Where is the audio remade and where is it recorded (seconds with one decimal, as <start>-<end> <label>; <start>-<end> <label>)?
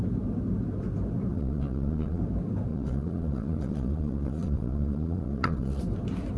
0.0-1.3 recorded; 1.3-2.2 remade; 2.2-2.7 recorded; 2.7-5.8 remade; 5.8-6.4 recorded